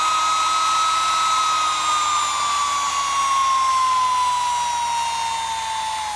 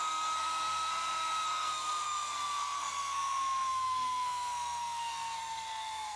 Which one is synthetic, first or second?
second